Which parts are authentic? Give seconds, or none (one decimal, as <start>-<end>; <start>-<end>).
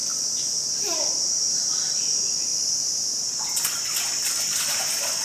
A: 2.0-5.2